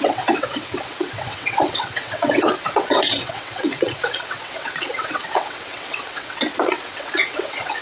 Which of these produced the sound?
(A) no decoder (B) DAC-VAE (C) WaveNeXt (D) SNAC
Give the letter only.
C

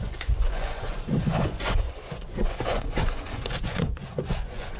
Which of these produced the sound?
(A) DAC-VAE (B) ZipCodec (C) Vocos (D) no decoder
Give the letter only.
C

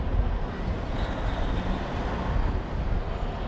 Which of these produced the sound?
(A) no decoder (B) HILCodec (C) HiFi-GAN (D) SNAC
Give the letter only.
A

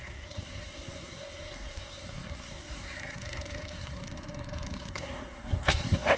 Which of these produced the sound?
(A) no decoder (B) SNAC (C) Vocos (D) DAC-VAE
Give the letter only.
B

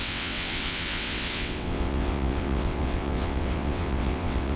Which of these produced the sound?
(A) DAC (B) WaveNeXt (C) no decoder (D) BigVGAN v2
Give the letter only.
B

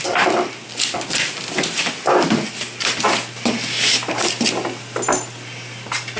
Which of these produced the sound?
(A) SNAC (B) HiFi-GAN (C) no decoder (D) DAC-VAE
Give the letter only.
C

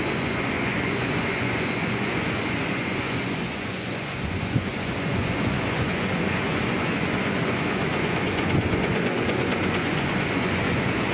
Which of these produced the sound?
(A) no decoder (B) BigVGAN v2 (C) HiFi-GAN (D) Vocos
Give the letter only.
D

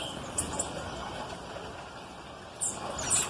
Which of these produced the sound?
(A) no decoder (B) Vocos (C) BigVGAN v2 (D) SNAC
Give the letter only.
A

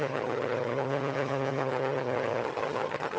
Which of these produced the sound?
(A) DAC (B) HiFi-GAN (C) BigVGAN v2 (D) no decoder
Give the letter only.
B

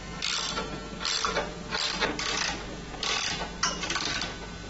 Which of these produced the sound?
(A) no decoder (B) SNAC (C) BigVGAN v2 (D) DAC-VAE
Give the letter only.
A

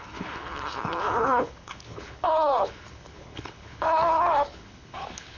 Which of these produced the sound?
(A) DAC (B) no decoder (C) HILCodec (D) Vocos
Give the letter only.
C